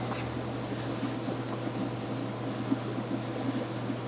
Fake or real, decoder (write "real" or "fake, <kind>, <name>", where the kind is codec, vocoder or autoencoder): real